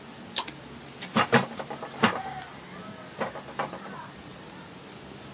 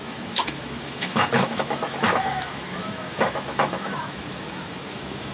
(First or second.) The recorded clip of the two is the first